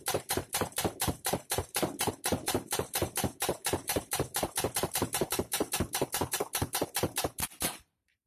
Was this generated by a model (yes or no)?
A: yes